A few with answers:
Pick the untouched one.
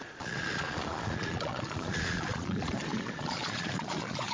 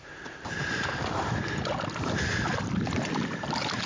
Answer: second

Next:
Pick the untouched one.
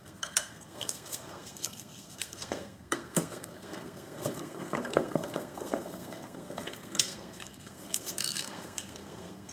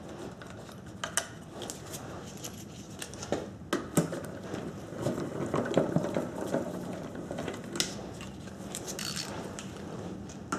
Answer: second